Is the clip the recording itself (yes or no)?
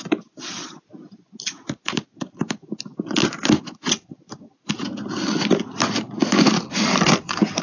yes